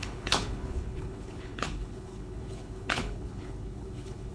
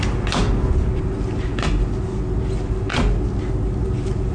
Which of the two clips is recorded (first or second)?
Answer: second